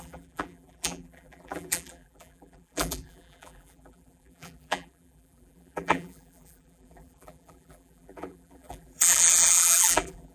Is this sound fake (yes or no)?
yes